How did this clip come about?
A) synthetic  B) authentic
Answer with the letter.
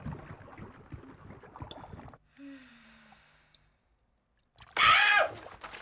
B